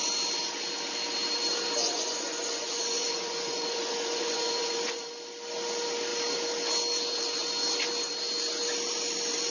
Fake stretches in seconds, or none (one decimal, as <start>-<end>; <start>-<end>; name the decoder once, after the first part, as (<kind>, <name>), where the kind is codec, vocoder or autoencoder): 1.8-5.1 (vocoder, Vocos)